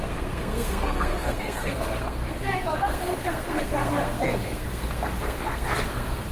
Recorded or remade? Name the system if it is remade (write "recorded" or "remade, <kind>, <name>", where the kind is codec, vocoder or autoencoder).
remade, codec, SNAC